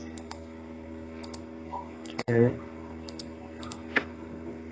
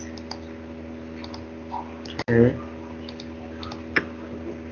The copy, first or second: first